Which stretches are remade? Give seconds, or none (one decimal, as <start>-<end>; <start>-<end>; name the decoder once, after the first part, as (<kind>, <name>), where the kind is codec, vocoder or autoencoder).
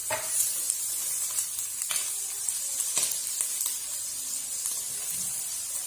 none